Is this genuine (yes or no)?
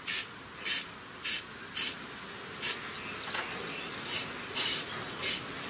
yes